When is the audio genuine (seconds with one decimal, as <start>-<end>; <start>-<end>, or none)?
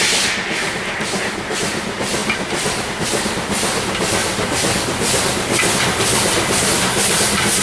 0.0-7.6